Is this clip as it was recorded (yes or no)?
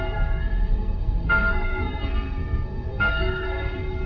no